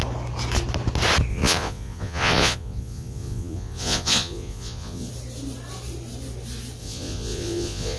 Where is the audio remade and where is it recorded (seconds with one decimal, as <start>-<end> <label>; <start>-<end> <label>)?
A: 0.0-1.3 recorded; 1.3-5.1 remade; 5.1-6.8 recorded; 6.8-8.0 remade